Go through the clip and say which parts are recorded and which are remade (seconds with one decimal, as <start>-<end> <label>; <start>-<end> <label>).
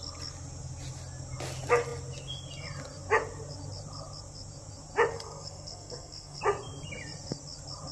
0.0-5.1 recorded; 5.1-6.4 remade; 6.4-7.9 recorded